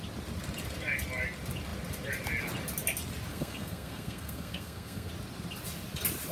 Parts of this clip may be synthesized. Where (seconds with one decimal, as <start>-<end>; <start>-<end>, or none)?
3.3-5.1